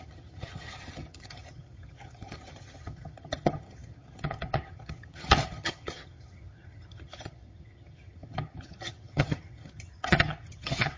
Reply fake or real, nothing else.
fake